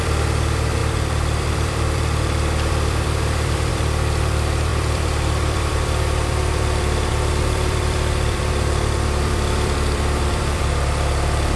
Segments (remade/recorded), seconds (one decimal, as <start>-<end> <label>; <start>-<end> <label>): 0.0-11.6 remade